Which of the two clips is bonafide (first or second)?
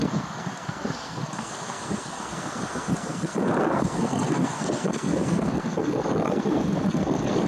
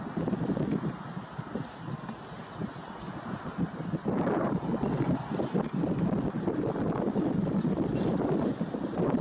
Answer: second